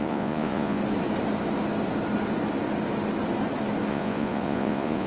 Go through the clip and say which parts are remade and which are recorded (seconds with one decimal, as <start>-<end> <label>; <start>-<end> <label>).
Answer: 0.0-0.8 remade; 0.8-3.9 recorded; 3.9-5.1 remade